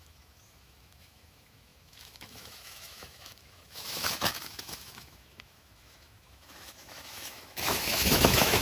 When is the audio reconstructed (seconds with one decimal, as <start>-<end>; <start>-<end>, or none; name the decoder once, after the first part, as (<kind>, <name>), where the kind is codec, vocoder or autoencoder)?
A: 0.0-8.6 (autoencoder, DAC-VAE)